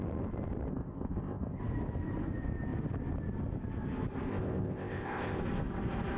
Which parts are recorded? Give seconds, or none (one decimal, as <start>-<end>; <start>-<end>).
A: 0.0-0.7; 1.6-4.3; 5.4-6.2